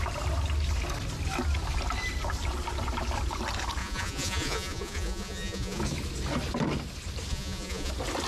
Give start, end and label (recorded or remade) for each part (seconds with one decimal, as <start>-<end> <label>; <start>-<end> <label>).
0.0-3.8 recorded; 3.8-5.8 remade; 5.8-7.3 recorded; 7.3-7.9 remade; 7.9-8.3 recorded